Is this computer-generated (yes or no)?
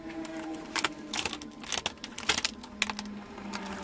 no